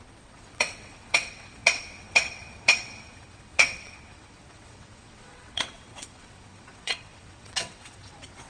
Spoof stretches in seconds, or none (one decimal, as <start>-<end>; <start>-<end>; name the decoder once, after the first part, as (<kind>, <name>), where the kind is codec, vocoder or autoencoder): 0.0-8.5 (vocoder, WaveNeXt)